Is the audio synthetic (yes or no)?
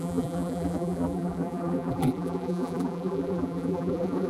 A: yes